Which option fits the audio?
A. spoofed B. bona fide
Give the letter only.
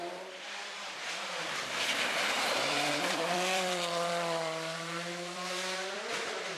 A